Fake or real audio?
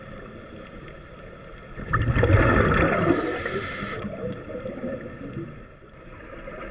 real